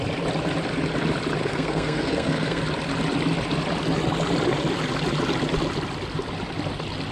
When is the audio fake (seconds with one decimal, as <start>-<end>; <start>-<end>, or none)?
1.4-2.6